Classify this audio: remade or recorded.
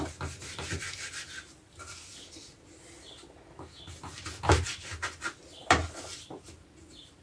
recorded